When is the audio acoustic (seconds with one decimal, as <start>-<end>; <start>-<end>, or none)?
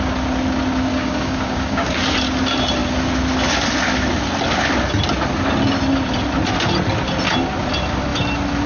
0.0-0.9; 2.0-8.7